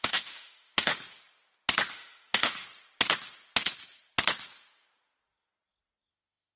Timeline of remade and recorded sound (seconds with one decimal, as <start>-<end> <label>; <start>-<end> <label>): 0.0-0.9 remade; 0.9-1.9 recorded; 1.9-2.6 remade; 2.6-6.1 recorded; 6.1-6.6 remade